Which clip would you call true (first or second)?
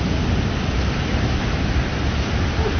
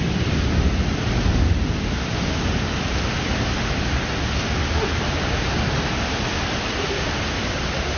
second